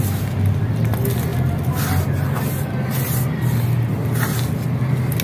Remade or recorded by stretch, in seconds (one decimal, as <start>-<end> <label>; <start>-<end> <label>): 0.0-5.2 recorded